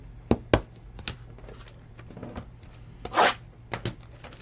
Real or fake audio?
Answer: real